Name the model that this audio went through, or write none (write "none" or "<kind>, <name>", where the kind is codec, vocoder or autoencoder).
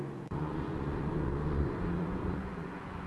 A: vocoder, Vocos